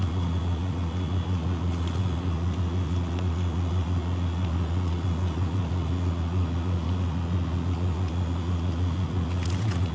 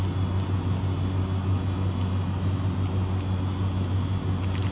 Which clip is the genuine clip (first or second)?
second